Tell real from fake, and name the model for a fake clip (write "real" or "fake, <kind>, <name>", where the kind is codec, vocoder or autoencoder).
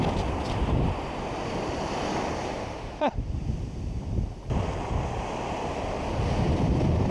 fake, vocoder, BigVGAN v2